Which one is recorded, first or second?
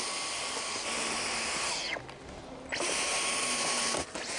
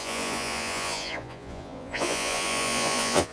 first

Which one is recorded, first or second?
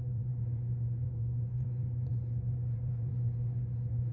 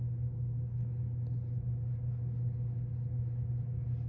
second